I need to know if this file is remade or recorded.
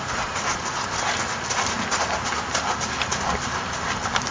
recorded